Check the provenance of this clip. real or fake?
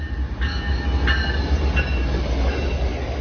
real